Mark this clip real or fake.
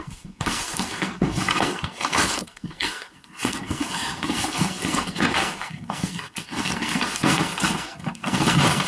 fake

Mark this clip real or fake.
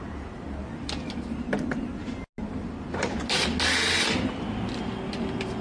real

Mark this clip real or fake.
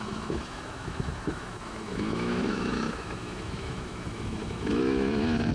fake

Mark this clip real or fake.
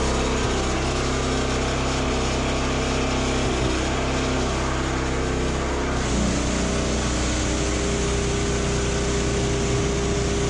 real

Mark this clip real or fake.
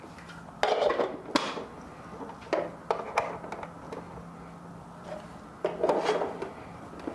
real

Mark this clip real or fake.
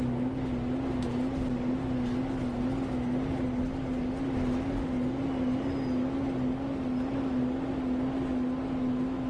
real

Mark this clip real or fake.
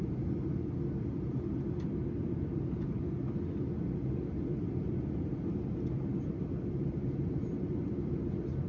real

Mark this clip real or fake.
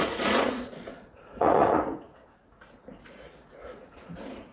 fake